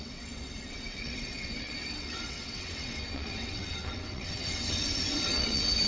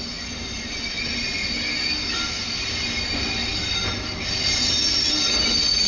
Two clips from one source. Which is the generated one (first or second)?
first